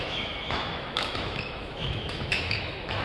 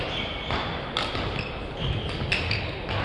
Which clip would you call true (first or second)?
second